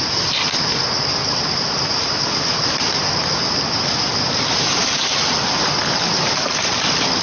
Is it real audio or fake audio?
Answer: real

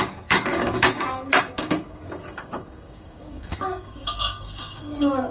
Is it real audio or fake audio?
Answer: fake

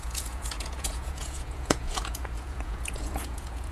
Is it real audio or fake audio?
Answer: fake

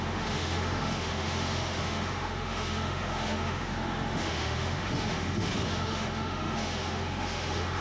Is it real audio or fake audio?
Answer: fake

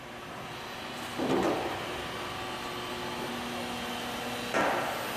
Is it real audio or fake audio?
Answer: real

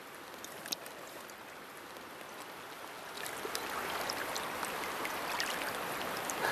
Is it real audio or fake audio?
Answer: real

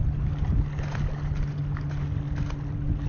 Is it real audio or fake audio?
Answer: real